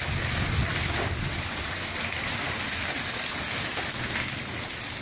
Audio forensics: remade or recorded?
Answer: recorded